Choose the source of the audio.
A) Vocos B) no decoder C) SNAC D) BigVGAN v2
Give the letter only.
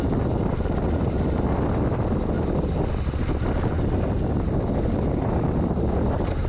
B